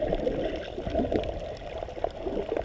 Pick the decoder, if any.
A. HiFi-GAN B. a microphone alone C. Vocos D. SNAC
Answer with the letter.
B